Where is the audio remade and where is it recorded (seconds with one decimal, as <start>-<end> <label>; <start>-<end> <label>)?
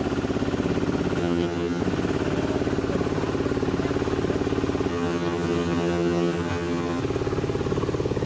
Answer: 0.0-1.2 recorded; 1.2-1.8 remade; 1.8-4.9 recorded; 4.9-7.0 remade; 7.0-8.3 recorded